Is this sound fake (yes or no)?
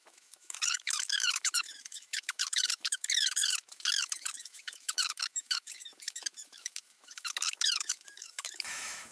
yes